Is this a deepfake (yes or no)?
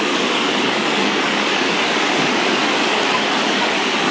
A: yes